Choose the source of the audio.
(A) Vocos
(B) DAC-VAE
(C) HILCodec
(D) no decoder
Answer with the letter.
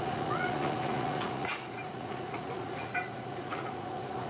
A